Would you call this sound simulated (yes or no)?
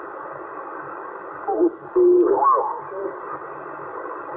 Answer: no